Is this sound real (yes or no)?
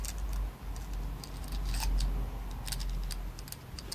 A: yes